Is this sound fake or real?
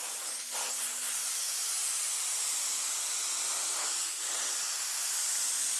real